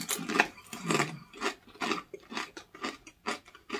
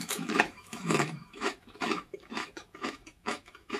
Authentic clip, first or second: first